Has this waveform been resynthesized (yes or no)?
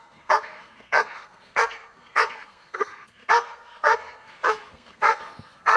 yes